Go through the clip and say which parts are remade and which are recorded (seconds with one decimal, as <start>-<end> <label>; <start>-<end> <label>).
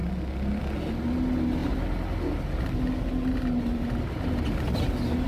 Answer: 0.0-5.3 recorded